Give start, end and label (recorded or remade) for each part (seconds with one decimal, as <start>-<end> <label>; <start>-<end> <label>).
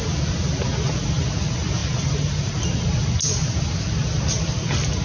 0.0-5.0 recorded